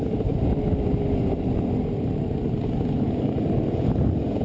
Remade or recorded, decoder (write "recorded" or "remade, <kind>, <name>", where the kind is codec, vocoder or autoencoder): recorded